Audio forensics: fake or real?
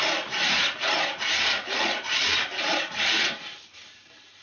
fake